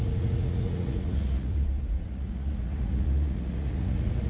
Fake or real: fake